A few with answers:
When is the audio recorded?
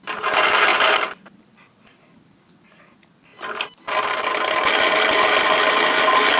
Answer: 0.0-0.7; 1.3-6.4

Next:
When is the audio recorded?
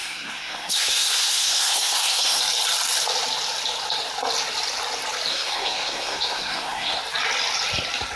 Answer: 2.4-5.3; 7.0-8.2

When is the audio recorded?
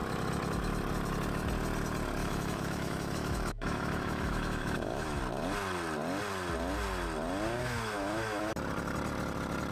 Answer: 0.0-2.2; 5.2-7.6; 8.5-9.7